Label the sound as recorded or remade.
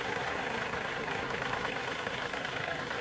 remade